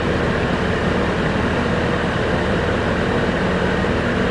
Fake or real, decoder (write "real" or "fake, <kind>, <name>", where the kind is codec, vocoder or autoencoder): real